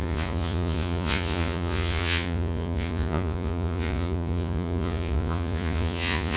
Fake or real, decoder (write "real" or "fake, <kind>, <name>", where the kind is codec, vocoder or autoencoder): fake, vocoder, Vocos